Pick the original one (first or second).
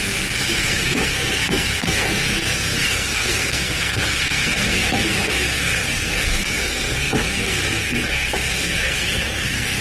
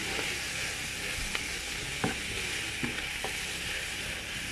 second